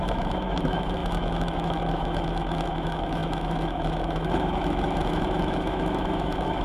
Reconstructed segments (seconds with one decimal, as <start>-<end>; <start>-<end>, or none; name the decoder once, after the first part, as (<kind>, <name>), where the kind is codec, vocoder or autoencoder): 0.0-6.6 (autoencoder, DAC-VAE)

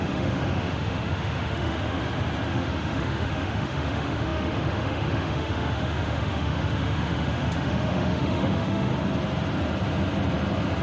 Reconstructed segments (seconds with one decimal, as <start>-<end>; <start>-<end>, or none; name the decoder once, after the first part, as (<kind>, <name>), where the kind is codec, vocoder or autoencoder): 0.0-2.0 (autoencoder, DAC-VAE); 2.5-8.9

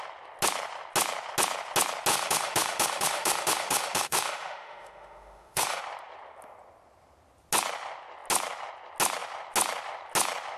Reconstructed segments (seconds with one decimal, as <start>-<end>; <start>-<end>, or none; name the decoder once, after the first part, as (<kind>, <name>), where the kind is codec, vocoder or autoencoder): 2.1-5.8 (autoencoder, DAC-VAE)

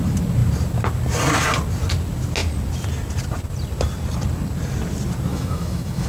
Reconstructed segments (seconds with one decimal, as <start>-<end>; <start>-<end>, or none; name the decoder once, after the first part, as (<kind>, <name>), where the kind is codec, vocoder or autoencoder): 5.3-6.1 (autoencoder, DAC-VAE)

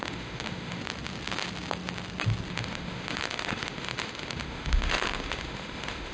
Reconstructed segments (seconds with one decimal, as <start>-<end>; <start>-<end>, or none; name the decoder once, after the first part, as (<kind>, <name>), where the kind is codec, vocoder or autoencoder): 0.0-0.8 (autoencoder, DAC-VAE); 2.5-6.1

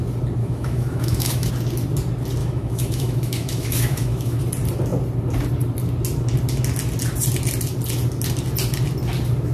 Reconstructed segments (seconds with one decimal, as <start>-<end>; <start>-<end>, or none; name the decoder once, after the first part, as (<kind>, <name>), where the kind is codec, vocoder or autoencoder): 0.4-1.5 (autoencoder, DAC-VAE); 2.4-4.4